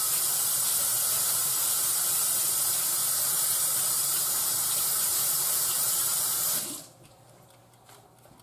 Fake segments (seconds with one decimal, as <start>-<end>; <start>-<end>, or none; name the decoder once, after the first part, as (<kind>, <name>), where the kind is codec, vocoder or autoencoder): none